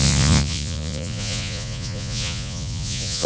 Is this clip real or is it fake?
fake